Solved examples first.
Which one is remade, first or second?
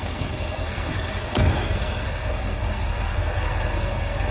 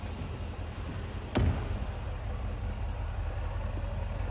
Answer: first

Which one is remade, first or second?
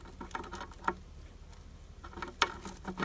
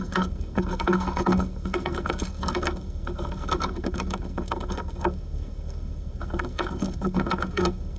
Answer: second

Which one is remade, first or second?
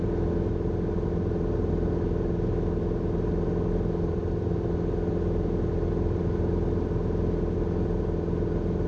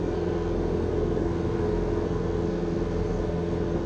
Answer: second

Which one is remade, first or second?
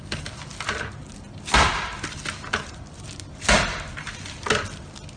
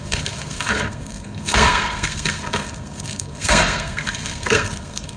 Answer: second